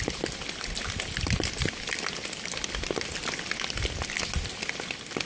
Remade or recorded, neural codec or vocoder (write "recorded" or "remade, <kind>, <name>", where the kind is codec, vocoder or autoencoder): recorded